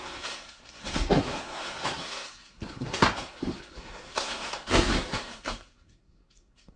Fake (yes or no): yes